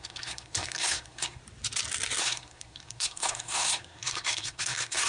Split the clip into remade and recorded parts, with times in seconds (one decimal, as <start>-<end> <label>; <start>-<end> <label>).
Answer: 0.0-1.4 remade; 1.4-2.2 recorded; 2.2-5.1 remade